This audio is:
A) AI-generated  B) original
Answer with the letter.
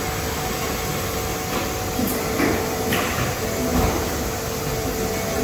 B